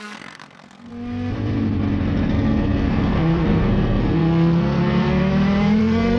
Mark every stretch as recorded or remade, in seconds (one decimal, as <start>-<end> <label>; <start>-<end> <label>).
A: 0.0-0.9 remade; 0.9-2.0 recorded; 2.0-5.3 remade; 5.3-5.8 recorded; 5.8-6.2 remade